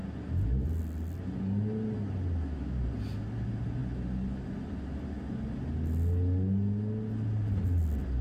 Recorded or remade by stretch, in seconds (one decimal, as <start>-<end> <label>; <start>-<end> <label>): 0.0-8.2 recorded